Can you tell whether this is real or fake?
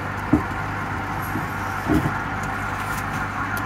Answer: real